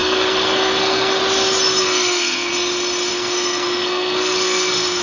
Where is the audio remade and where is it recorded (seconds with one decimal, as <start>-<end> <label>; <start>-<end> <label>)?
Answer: 0.0-1.2 remade; 1.2-1.8 recorded; 1.8-2.5 remade; 2.5-3.1 recorded; 3.1-5.0 remade